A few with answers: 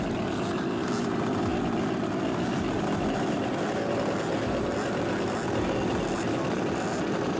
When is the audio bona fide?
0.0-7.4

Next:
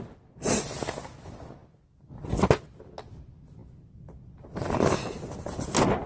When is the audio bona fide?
0.0-6.1

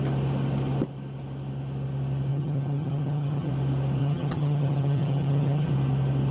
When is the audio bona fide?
0.0-2.3; 3.5-4.0; 5.7-6.3

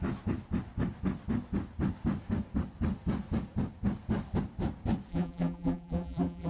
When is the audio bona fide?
0.0-5.1